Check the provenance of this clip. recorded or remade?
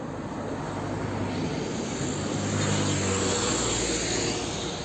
recorded